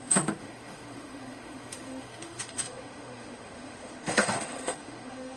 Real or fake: fake